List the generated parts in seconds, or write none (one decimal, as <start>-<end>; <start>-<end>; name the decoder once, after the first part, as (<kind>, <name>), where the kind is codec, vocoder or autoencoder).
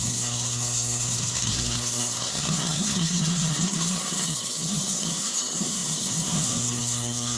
0.0-7.4 (codec, SNAC)